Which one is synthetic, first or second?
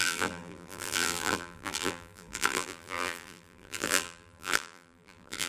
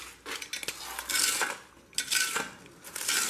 first